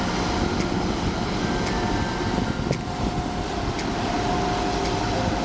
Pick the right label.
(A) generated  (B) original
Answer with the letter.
B